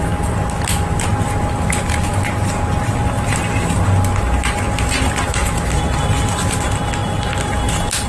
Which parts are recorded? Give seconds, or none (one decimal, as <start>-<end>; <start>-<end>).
0.0-8.1